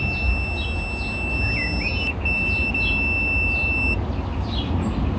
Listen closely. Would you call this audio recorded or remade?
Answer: recorded